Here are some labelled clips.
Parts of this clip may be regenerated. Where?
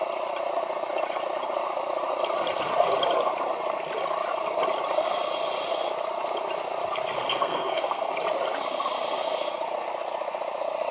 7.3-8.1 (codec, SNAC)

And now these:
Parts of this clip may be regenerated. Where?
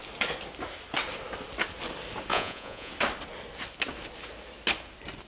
2.3-2.9 (vocoder, Vocos)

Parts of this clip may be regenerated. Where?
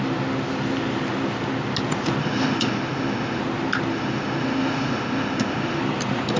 2.2-3.4 (autoencoder, DAC-VAE); 3.9-5.8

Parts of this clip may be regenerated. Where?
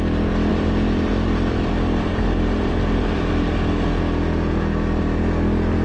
0.5-4.0 (vocoder, BigVGAN v2)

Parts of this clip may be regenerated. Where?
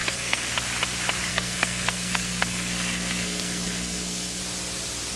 0.0-0.5 (codec, SNAC); 1.3-4.4